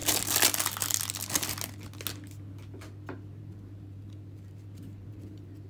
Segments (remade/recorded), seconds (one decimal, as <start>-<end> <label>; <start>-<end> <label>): 0.0-3.4 recorded; 3.4-5.7 remade